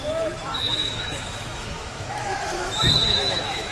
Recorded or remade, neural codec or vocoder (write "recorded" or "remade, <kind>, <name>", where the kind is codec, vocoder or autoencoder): remade, autoencoder, DAC-VAE